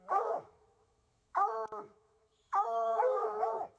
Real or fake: fake